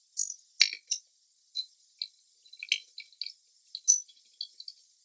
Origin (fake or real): real